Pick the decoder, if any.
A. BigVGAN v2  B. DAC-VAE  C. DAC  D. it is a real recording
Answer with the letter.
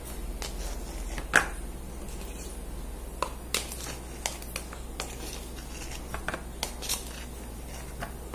D